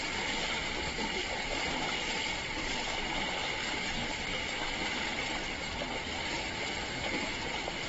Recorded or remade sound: recorded